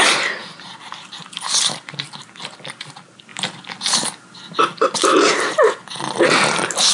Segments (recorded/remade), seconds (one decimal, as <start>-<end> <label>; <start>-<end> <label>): 0.0-3.3 remade; 3.3-4.6 recorded; 4.6-5.6 remade; 5.6-6.2 recorded; 6.2-6.9 remade